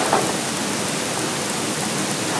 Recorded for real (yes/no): yes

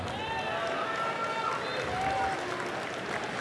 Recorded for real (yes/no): yes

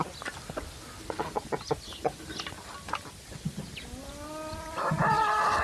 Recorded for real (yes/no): yes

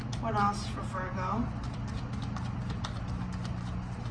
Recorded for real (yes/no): yes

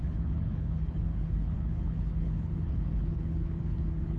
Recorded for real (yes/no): no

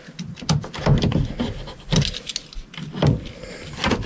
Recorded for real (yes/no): yes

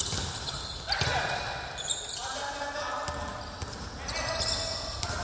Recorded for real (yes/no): yes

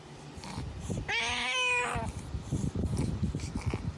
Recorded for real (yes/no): yes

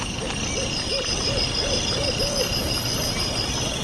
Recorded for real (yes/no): yes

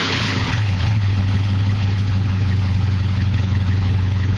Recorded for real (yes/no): no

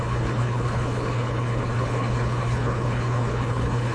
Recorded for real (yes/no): no